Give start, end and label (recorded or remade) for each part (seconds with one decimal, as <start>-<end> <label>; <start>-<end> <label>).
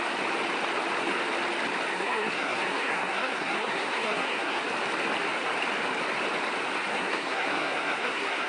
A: 0.0-1.9 recorded; 1.9-4.6 remade; 4.6-6.9 recorded; 6.9-8.5 remade